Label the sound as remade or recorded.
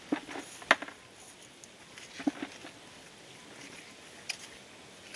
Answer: recorded